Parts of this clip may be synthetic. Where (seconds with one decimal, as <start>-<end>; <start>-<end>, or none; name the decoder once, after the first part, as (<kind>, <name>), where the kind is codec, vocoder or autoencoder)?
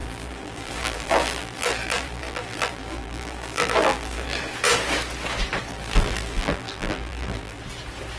0.0-4.4 (vocoder, BigVGAN v2); 5.7-7.6